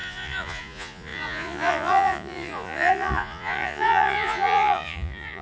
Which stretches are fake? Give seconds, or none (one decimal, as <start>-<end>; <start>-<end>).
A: 0.0-5.4